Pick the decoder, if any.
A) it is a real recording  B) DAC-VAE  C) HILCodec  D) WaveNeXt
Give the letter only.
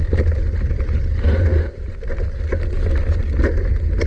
A